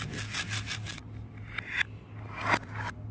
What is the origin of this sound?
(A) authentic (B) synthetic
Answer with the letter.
A